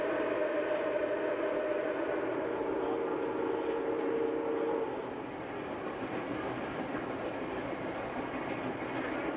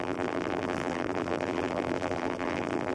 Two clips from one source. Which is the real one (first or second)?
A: first